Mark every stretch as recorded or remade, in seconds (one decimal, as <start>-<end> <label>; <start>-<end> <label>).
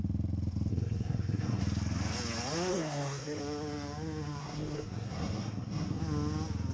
0.0-0.7 recorded; 0.7-1.6 remade; 1.6-2.7 recorded; 2.7-3.4 remade; 3.4-4.4 recorded; 4.4-6.0 remade; 6.0-6.7 recorded